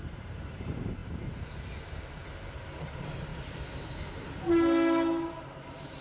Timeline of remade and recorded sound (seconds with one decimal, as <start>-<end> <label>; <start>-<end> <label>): 0.0-3.3 remade; 3.3-5.4 recorded; 5.4-6.0 remade